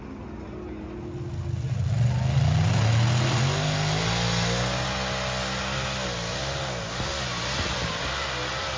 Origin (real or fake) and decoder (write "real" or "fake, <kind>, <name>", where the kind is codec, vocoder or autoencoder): real